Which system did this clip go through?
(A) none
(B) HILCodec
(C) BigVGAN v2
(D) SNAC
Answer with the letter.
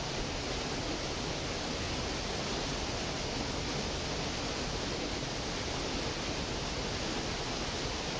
A